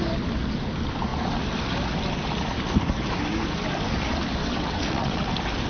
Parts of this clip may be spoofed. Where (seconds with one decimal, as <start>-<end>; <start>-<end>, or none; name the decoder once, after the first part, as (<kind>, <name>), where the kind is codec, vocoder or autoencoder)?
4.4-5.3 (vocoder, WaveNeXt)